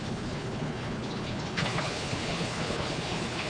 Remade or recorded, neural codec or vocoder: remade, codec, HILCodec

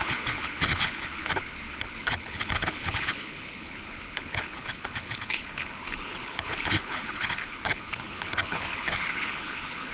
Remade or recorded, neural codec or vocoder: remade, codec, HILCodec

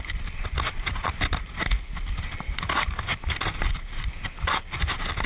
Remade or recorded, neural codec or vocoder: recorded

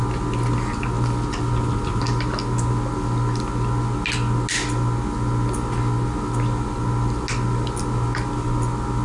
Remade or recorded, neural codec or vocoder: recorded